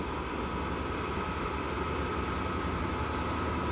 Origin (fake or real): real